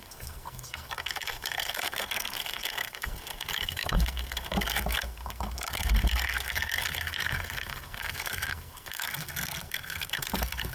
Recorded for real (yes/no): no